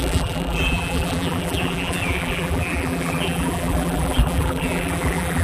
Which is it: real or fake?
fake